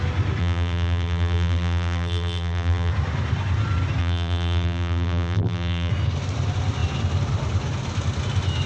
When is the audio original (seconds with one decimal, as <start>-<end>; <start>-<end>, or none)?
0.0-0.4; 2.9-4.0; 5.9-8.7